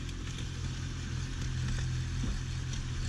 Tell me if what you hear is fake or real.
real